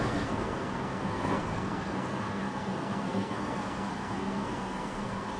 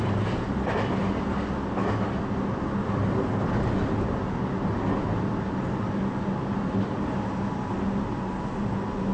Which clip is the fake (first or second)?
first